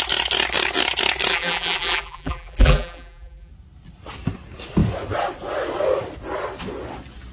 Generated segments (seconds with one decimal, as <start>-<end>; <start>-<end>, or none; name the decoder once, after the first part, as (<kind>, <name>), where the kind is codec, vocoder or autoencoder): 1.3-3.5 (vocoder, BigVGAN v2)